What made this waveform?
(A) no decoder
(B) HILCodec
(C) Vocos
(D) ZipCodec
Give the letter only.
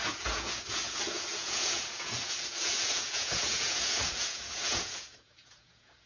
C